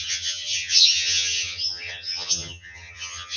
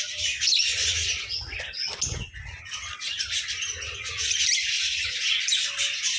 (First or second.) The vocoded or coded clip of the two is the first